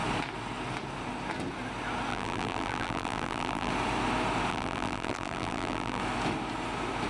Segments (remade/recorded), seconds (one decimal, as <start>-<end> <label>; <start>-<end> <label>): 0.0-2.1 recorded; 2.1-3.7 remade; 3.7-4.5 recorded; 4.5-6.0 remade; 6.0-7.1 recorded

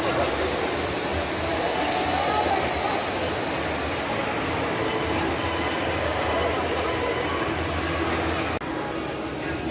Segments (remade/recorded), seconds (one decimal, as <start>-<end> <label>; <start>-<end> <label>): 0.0-9.7 recorded

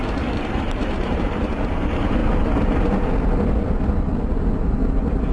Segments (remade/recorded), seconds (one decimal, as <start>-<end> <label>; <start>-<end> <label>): 0.0-2.2 remade; 2.2-5.3 recorded

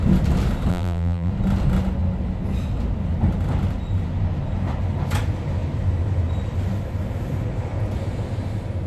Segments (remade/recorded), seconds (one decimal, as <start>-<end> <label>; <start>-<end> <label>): 0.0-0.7 recorded; 0.7-1.3 remade; 1.3-8.9 recorded

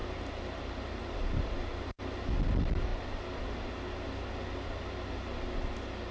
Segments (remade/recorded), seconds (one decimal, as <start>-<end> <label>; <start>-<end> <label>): 0.0-2.0 remade; 2.0-6.1 recorded